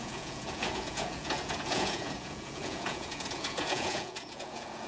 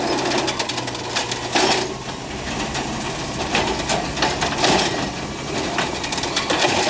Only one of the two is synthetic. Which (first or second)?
first